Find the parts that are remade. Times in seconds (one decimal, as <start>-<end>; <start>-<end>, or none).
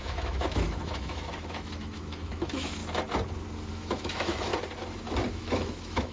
0.0-2.8; 3.7-4.5; 5.3-6.1